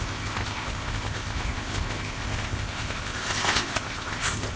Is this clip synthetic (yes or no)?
yes